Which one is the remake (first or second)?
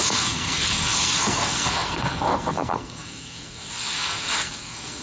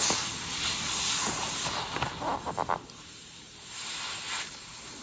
first